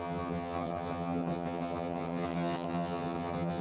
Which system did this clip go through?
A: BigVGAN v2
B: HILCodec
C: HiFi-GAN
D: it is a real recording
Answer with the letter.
C